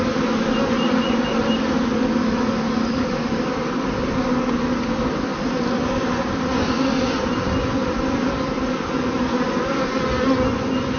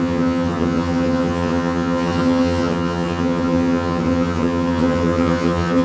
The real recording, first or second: first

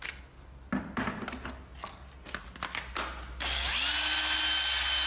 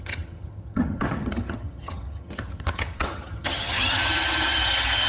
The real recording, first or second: first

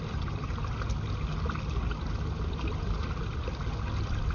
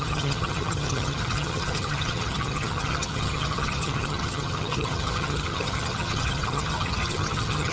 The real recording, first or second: first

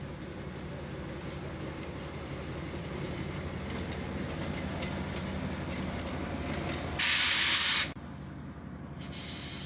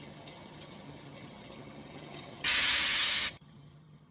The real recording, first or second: first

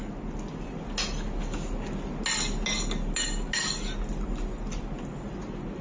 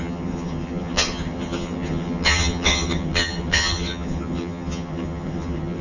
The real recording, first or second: first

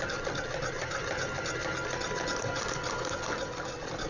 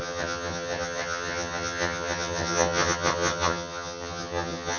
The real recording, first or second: first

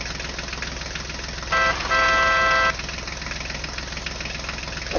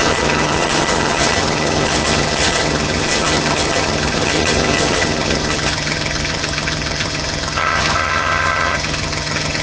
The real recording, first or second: first